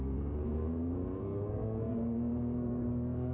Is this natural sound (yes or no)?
no